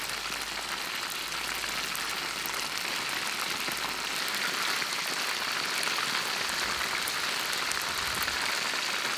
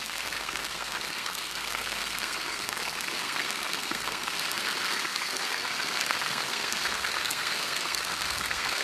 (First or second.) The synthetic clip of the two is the second